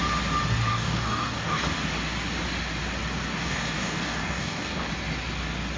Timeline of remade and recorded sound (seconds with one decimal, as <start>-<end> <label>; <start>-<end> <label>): 0.0-0.7 recorded; 0.7-1.6 remade; 1.6-3.3 recorded; 3.3-4.9 remade; 4.9-5.8 recorded